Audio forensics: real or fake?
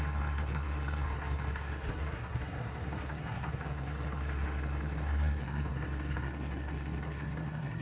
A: fake